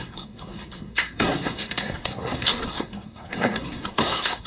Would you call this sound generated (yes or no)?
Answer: yes